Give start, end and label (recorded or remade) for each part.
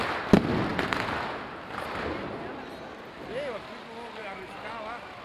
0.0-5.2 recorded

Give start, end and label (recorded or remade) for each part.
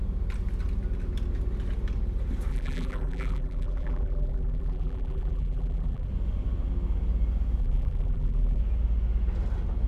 0.0-2.5 recorded; 2.5-6.1 remade; 6.1-7.6 recorded; 7.6-8.6 remade; 8.6-9.9 recorded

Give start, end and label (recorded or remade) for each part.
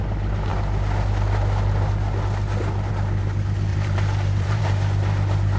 0.0-3.7 recorded; 3.7-4.6 remade; 4.6-5.6 recorded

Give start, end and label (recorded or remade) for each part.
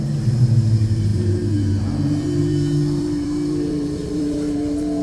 0.0-5.0 remade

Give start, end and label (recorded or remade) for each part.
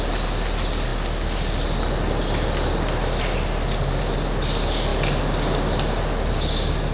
0.0-6.9 recorded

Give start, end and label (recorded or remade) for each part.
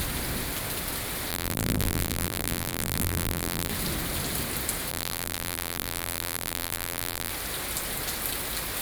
0.0-1.3 recorded; 1.3-3.7 remade; 3.7-4.9 recorded; 4.9-7.3 remade; 7.3-8.8 recorded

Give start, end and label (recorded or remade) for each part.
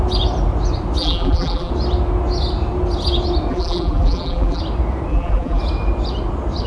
0.0-1.0 recorded; 1.0-1.7 remade; 1.7-3.5 recorded; 3.5-4.6 remade; 4.6-5.1 recorded; 5.1-5.6 remade; 5.6-6.7 recorded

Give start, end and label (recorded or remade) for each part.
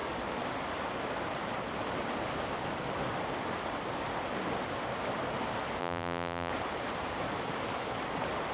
0.0-5.8 recorded; 5.8-6.5 remade; 6.5-8.5 recorded